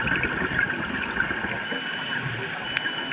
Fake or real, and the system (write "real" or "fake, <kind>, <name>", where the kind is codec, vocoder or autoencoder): real